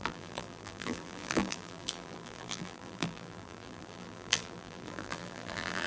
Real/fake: fake